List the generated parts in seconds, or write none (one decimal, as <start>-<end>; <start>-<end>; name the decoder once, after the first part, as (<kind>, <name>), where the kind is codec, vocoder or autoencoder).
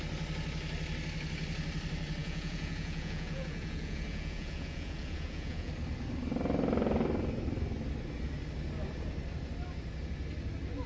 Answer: 2.2-5.7 (vocoder, Vocos)